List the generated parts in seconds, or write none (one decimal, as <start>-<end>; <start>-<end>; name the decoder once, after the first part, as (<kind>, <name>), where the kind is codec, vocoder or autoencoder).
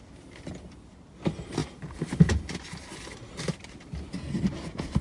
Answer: none